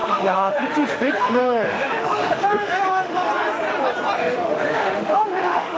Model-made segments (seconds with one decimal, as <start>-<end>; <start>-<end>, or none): 0.0-3.3; 4.2-5.8